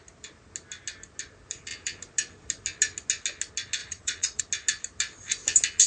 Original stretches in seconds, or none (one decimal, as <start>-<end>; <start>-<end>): 0.0-3.8; 4.4-5.9